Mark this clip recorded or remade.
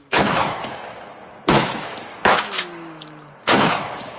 remade